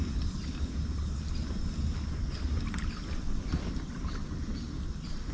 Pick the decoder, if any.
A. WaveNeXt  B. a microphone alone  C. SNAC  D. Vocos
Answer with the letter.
B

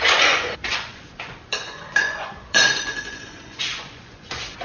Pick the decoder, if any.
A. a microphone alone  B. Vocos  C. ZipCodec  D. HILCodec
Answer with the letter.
B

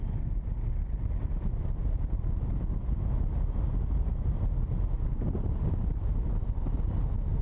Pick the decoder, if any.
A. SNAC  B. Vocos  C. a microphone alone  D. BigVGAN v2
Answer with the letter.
C